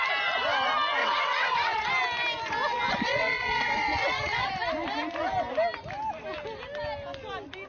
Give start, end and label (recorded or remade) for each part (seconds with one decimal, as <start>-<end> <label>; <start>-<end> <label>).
0.0-1.0 recorded; 1.0-1.9 remade; 1.9-2.9 recorded; 2.9-4.5 remade; 4.5-7.7 recorded